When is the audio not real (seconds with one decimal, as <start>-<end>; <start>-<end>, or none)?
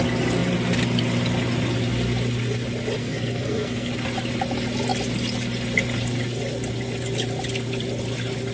3.0-3.9